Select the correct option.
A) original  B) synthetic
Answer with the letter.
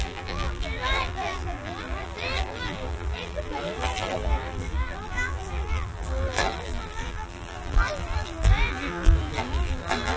B